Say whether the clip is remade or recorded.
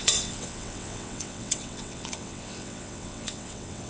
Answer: remade